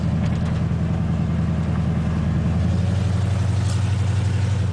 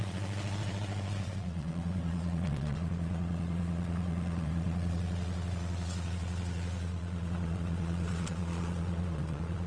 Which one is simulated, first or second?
second